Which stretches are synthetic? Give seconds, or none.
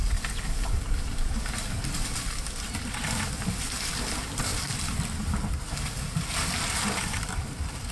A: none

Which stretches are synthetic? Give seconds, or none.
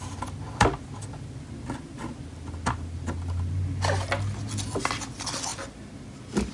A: none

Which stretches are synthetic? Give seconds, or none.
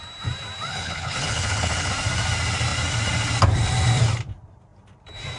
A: 0.7-1.9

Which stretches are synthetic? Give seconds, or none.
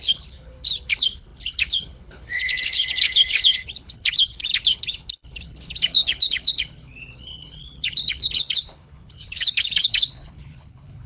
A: 0.0-11.1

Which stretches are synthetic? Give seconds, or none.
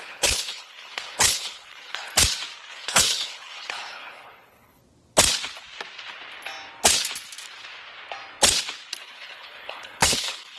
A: 0.0-2.1; 2.7-4.8; 9.0-10.6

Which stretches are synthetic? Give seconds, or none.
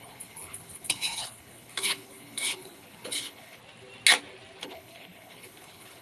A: 0.0-3.6; 4.6-6.0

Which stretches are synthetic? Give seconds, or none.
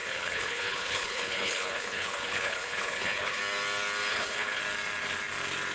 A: 0.0-3.4; 4.1-4.6